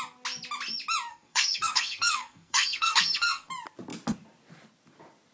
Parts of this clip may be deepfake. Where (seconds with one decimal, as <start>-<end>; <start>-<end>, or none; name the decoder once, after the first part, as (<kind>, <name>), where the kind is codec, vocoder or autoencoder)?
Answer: 1.1-3.5 (codec, SNAC)